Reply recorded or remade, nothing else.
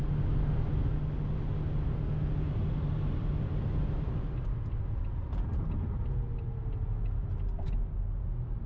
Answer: recorded